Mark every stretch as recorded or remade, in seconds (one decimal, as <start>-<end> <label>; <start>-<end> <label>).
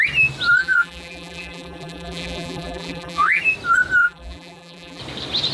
0.0-0.6 recorded; 0.6-3.4 remade; 3.4-4.0 recorded; 4.0-5.0 remade; 5.0-5.5 recorded